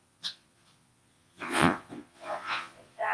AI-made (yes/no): yes